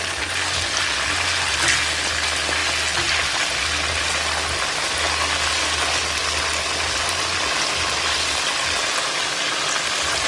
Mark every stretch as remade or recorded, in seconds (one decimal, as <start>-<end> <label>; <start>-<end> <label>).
0.0-10.3 recorded